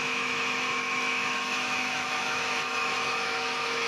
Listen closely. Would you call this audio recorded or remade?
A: remade